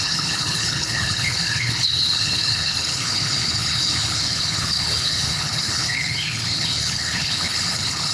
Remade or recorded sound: remade